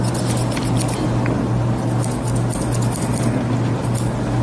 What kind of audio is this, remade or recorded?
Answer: recorded